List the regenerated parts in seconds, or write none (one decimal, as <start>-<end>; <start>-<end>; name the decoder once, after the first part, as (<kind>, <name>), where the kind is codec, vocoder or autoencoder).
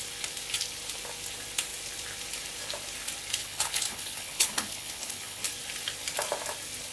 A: 3.4-5.4 (codec, HILCodec)